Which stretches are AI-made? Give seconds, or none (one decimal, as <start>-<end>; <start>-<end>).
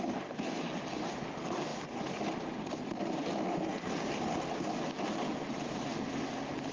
none